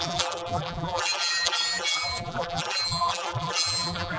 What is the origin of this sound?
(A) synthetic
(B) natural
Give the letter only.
A